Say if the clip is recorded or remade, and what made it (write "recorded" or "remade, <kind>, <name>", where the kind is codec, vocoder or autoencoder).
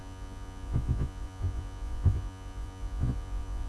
remade, vocoder, Vocos